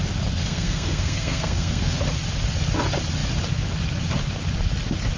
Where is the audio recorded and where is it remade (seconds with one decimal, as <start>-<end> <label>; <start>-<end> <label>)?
0.0-0.4 recorded; 0.4-2.0 remade; 2.0-5.2 recorded